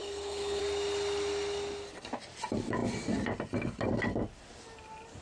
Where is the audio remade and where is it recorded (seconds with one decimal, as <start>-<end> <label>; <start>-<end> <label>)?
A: 0.0-0.6 remade; 0.6-5.2 recorded